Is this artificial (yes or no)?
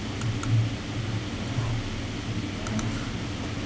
no